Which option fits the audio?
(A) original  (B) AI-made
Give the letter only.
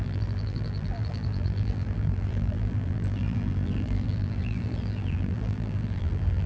B